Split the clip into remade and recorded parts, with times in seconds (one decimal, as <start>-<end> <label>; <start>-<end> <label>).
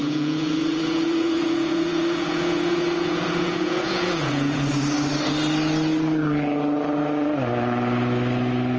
0.0-4.7 remade; 4.7-8.8 recorded